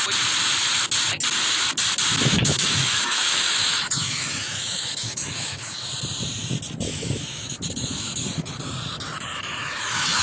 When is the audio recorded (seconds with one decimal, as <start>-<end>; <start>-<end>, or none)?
0.0-2.3; 5.7-6.9; 8.3-9.3